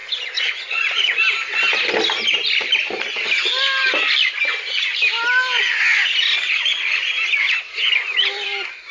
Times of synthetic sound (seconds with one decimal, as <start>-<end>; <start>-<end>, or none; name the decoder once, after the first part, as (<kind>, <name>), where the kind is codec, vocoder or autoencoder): 0.0-1.2 (vocoder, Vocos)